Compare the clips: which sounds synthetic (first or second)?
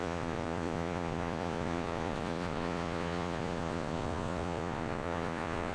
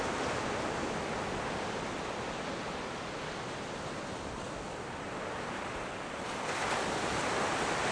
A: first